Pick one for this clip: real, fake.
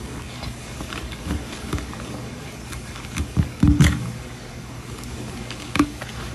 fake